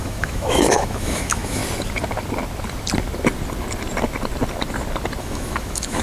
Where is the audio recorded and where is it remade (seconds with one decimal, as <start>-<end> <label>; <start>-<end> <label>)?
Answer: 0.0-1.6 remade; 1.6-5.2 recorded; 5.2-6.0 remade